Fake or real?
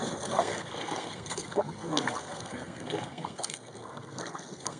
fake